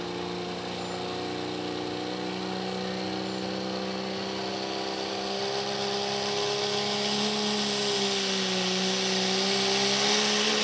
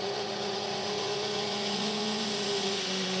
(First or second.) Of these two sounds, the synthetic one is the second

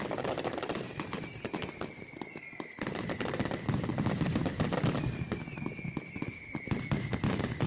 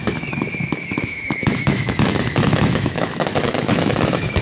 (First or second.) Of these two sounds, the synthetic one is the second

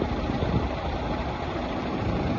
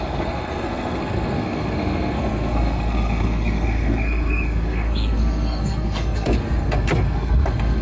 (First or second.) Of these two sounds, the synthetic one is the second